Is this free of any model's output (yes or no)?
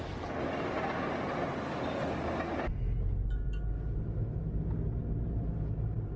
yes